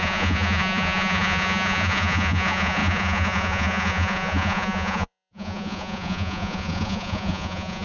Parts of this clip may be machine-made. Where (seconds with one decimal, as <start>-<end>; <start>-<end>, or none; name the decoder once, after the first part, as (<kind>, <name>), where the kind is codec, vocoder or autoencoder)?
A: 0.0-7.8 (vocoder, Vocos)